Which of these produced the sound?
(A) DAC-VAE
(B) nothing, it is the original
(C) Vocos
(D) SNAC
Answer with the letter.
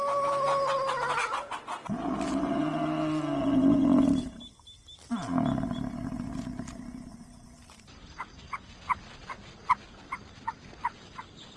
B